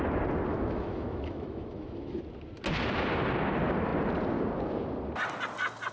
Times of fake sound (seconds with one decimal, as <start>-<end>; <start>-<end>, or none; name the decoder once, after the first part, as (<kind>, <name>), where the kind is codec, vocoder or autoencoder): 0.5-2.2 (autoencoder, DAC-VAE)

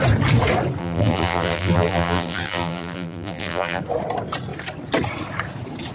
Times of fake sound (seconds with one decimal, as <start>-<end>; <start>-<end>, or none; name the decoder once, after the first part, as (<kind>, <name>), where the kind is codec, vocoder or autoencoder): 0.8-3.8 (vocoder, BigVGAN v2)

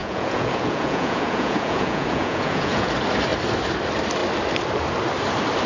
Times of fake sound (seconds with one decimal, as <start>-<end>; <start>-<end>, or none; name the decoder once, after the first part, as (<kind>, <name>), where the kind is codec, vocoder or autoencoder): 0.0-2.9 (vocoder, Vocos)

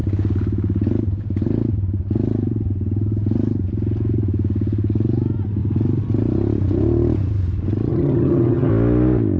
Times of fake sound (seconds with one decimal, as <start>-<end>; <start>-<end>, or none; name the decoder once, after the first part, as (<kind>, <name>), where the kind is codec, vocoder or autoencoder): 7.9-8.7 (vocoder, HiFi-GAN)

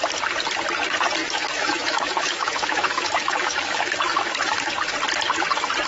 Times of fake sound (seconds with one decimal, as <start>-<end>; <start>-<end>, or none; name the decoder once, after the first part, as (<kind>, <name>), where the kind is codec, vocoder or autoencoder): 1.2-4.7 (autoencoder, DAC-VAE)

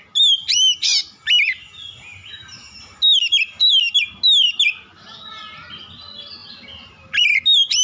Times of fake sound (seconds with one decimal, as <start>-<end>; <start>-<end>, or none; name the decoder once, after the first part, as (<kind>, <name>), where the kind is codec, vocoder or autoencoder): none